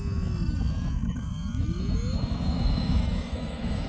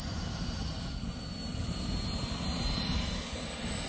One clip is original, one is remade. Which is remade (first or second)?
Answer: first